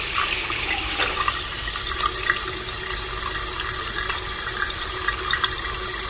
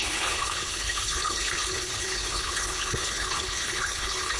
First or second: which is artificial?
second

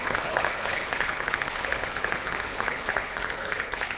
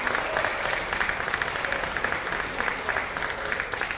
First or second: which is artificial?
first